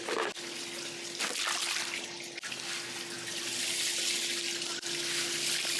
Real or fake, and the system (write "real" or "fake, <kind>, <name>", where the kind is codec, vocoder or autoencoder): real